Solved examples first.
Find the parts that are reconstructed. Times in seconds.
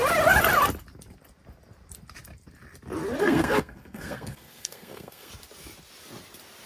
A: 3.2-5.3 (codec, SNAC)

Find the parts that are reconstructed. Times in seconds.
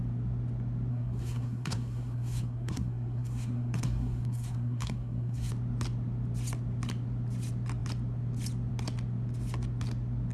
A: 0.9-5.5 (codec, SNAC)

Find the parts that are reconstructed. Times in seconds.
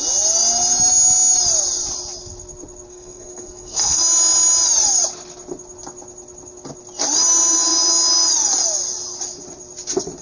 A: 2.9-4.0 (codec, SNAC)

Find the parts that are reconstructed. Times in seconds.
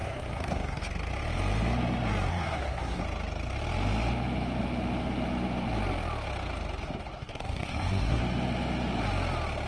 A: 0.0-0.8 (codec, SNAC); 2.3-3.0; 7.2-8.2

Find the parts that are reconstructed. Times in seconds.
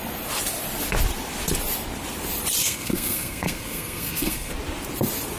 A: 2.6-4.5 (codec, SNAC)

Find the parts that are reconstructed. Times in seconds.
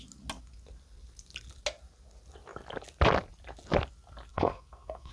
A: 4.3-5.1 (codec, SNAC)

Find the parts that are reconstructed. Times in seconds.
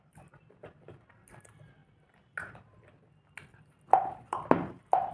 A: none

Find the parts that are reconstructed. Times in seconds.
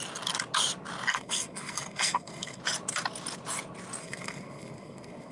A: 1.1-2.6 (codec, SNAC); 4.0-5.3